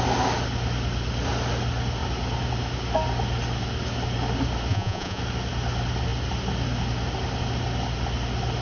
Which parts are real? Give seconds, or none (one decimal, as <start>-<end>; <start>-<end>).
0.0-4.7; 5.2-8.6